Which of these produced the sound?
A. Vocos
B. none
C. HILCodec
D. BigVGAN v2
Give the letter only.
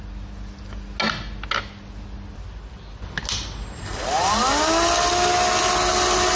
B